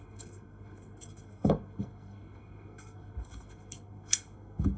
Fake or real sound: fake